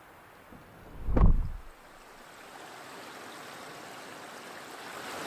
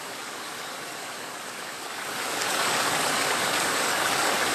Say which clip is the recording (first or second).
first